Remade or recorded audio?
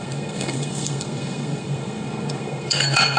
remade